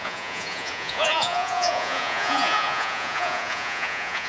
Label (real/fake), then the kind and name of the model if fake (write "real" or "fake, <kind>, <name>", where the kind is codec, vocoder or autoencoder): fake, vocoder, Vocos